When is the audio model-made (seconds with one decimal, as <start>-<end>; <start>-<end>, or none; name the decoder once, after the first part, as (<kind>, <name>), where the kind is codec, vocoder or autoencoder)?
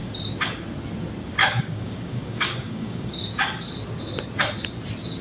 1.4-3.1 (codec, DAC)